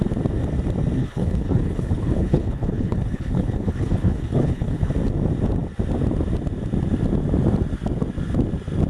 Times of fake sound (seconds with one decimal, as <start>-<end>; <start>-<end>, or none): 1.0-4.9